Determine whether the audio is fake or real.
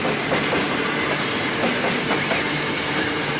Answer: real